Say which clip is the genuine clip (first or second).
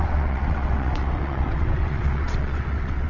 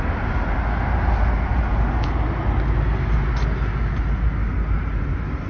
second